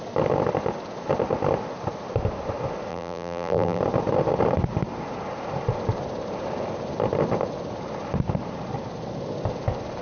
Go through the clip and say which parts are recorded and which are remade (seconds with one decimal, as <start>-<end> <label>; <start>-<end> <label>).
0.0-2.9 recorded; 2.9-3.8 remade; 3.8-10.0 recorded